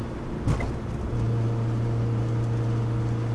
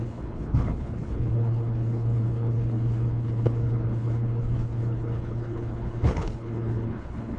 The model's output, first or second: second